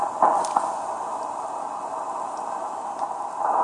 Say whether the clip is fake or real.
real